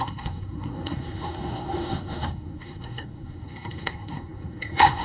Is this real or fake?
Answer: fake